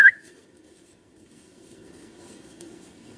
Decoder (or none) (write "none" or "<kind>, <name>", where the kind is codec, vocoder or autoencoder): codec, SNAC